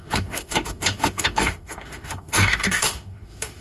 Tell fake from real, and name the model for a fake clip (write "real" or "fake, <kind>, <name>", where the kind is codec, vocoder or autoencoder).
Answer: fake, autoencoder, DAC-VAE